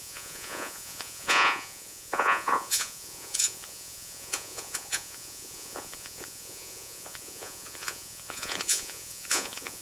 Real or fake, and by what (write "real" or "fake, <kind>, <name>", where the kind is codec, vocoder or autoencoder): fake, vocoder, Vocos